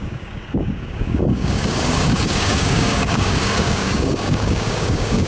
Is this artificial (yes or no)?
yes